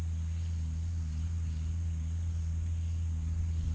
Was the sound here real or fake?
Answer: real